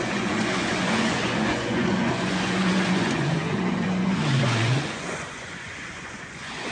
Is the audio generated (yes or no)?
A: yes